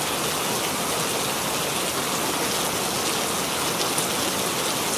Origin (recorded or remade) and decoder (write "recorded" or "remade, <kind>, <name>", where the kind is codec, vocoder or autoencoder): recorded